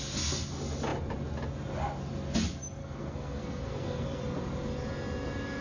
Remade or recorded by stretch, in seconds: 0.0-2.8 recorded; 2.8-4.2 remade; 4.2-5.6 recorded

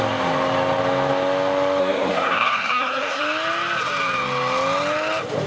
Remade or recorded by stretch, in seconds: 0.0-1.8 recorded; 1.8-3.2 remade; 3.2-5.5 recorded